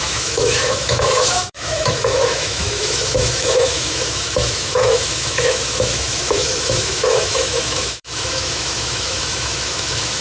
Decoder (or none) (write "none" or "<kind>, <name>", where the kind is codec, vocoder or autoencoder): autoencoder, DAC-VAE